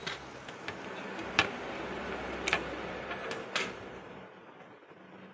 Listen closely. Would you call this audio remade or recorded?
recorded